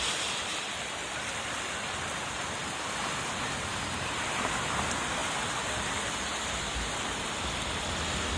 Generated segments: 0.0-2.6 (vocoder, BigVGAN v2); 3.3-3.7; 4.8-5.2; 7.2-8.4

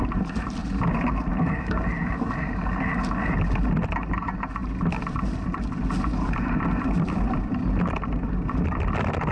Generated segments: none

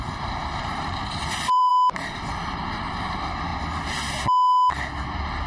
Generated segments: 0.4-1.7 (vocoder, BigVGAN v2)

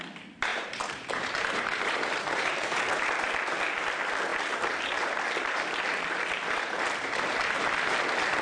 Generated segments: 0.5-3.0 (vocoder, BigVGAN v2)